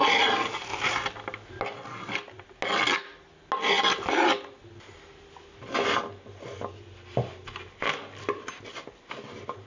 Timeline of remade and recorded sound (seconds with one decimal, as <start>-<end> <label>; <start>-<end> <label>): 0.0-9.7 recorded